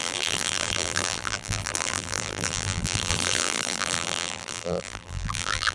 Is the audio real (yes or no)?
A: no